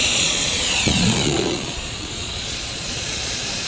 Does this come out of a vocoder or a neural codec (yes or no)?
yes